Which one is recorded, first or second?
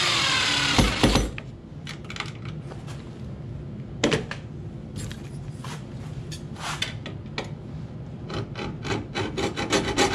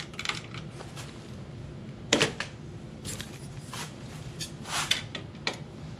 first